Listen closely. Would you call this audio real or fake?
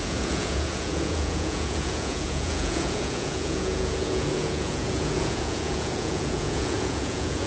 fake